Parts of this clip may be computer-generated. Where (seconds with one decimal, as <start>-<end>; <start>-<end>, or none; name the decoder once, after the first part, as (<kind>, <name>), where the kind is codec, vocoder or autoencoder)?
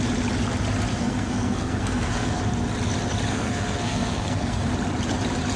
1.0-2.4 (codec, SNAC); 3.3-4.7